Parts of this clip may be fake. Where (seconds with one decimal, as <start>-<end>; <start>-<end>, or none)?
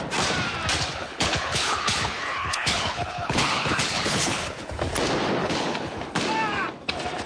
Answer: 0.9-4.8; 5.4-6.0